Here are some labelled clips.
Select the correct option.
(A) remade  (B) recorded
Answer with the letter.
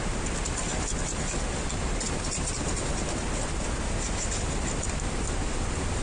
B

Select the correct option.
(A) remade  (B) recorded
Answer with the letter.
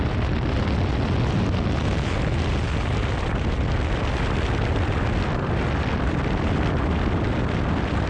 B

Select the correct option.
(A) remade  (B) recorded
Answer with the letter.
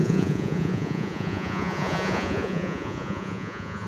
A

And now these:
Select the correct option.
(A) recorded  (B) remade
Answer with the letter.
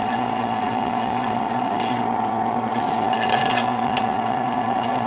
B